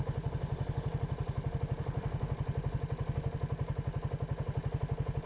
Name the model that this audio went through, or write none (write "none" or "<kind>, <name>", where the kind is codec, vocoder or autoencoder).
none